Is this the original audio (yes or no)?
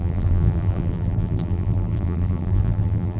no